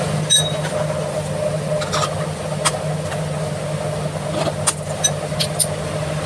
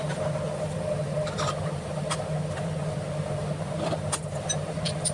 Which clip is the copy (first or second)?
second